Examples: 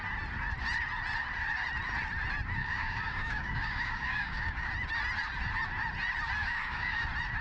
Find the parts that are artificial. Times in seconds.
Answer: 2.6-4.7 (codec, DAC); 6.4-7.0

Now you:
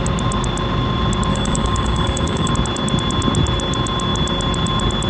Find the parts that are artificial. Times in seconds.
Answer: 1.3-2.5 (codec, DAC)

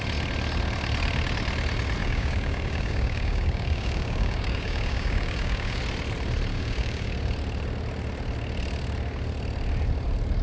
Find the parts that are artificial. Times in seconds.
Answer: 2.0-5.8 (codec, DAC); 6.5-7.1

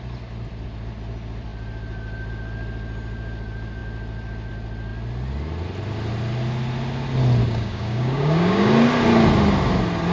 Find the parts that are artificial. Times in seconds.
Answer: 7.4-8.7 (codec, DAC)

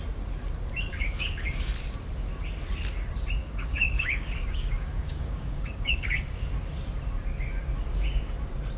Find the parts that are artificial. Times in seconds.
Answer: 0.9-1.7 (codec, DAC); 3.4-6.5